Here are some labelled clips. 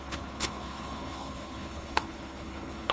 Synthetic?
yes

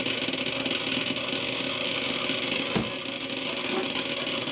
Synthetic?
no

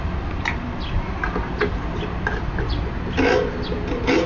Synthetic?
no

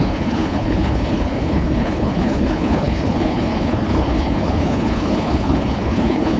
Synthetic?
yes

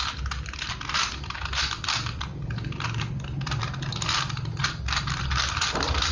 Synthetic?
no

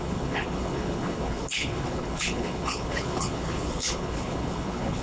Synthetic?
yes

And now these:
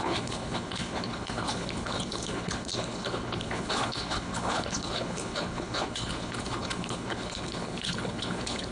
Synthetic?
yes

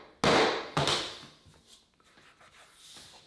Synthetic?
no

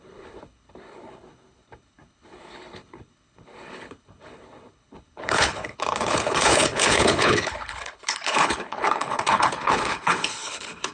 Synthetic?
yes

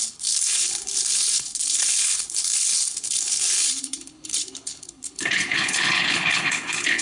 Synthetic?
yes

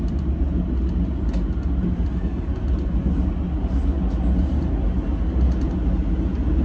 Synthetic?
no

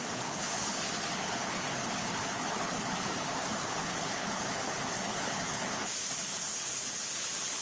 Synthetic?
yes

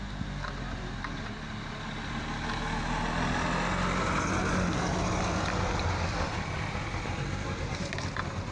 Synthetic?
no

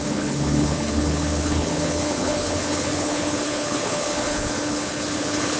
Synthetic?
yes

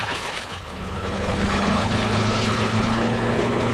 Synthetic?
yes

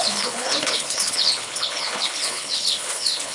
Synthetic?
yes